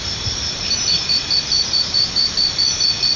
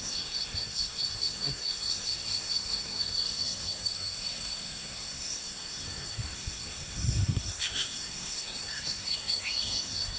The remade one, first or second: second